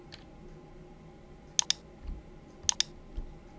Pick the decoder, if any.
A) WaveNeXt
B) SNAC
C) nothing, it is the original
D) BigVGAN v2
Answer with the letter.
C